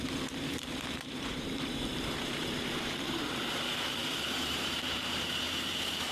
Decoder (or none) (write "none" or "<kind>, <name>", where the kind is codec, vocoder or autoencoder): vocoder, BigVGAN v2